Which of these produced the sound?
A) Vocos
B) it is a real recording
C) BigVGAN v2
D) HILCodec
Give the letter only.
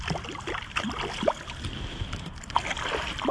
B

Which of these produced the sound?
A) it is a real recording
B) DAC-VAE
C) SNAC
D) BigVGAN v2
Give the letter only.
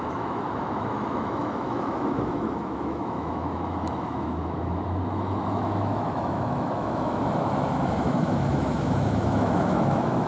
B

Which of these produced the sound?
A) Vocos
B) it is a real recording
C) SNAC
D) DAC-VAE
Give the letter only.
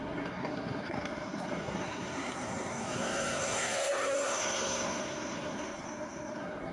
C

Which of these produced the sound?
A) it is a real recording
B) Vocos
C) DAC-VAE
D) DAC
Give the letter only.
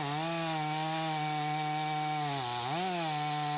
A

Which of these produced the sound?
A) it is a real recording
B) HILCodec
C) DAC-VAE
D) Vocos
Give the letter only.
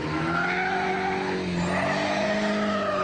A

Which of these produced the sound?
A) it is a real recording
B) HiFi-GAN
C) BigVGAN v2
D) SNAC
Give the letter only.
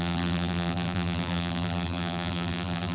C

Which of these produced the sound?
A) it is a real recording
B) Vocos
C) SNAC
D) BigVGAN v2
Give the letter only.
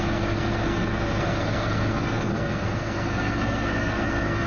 C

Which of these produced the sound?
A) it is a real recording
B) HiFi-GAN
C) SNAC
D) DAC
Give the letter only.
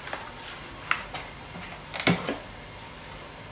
A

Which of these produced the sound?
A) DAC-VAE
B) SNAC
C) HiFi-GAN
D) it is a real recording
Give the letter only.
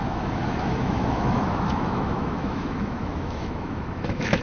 A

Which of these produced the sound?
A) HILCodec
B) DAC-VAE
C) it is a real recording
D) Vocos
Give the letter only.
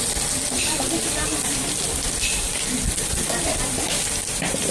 C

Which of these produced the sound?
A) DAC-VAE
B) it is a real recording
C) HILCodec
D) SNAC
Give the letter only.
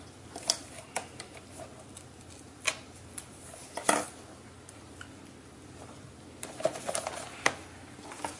B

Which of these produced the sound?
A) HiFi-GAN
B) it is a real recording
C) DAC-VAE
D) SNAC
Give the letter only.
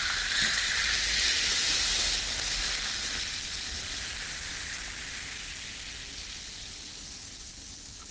B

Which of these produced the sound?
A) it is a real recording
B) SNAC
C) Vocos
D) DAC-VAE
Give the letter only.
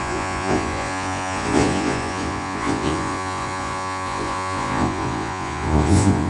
C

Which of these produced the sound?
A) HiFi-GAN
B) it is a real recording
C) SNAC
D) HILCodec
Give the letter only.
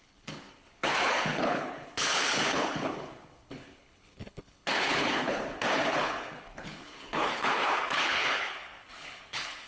D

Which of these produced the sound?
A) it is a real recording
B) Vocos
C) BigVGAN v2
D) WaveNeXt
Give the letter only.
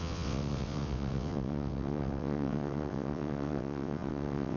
D